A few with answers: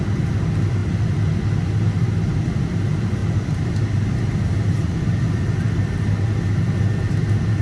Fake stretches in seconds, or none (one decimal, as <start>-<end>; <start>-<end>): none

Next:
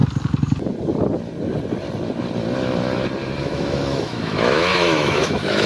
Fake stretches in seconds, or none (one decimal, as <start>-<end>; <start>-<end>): 3.4-5.7

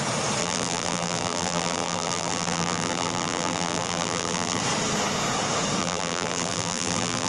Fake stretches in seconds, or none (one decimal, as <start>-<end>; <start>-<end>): 0.4-4.6; 5.8-7.3

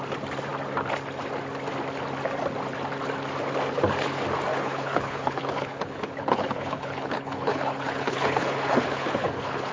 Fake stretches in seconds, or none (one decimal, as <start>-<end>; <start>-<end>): 4.5-9.7

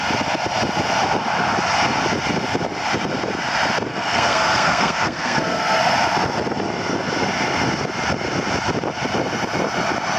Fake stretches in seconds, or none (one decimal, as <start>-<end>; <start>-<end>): 3.9-5.8

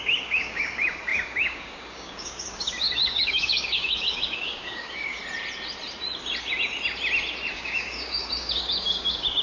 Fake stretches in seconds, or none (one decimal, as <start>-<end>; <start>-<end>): 0.0-5.2; 7.5-9.4

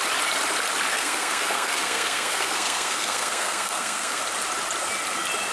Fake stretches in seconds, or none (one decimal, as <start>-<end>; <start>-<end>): 0.9-4.2

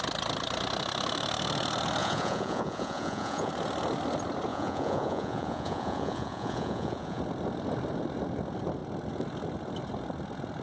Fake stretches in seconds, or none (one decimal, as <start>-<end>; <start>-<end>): 2.0-3.5; 4.5-7.2